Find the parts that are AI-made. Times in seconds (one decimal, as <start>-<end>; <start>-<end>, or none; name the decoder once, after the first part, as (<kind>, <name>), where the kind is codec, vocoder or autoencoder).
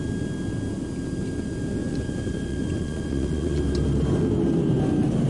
1.8-3.6 (vocoder, Vocos)